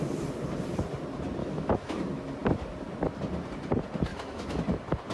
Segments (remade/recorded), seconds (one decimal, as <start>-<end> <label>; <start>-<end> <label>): 0.0-1.4 recorded; 1.4-2.0 remade; 2.0-4.1 recorded; 4.1-4.6 remade; 4.6-5.1 recorded